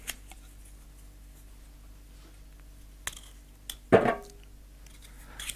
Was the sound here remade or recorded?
recorded